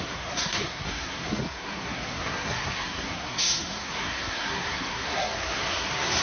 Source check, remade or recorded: remade